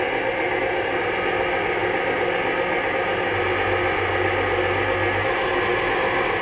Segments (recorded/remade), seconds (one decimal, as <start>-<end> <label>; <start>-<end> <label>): 0.0-6.4 recorded